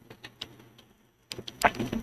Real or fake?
real